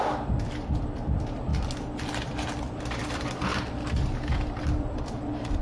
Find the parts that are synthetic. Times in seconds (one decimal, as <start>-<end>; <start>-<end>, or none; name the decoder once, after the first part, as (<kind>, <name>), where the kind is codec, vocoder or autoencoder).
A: 0.0-1.5 (vocoder, BigVGAN v2); 2.0-3.5; 4.3-5.6